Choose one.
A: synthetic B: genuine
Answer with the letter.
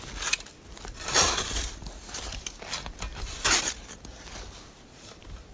B